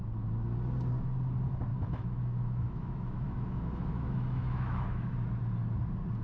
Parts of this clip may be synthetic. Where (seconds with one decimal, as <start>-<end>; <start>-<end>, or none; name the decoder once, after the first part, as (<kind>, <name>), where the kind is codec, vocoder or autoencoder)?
1.7-5.1 (autoencoder, DAC-VAE)